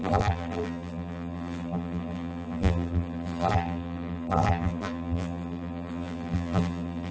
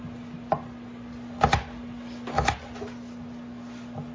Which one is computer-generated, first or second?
first